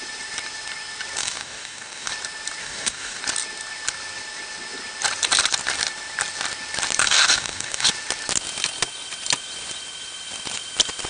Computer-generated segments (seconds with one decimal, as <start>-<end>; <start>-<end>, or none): 1.2-2.1; 2.6-3.2; 7.0-7.9